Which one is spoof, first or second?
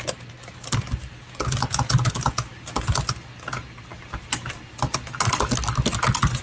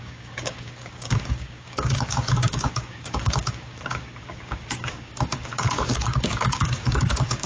second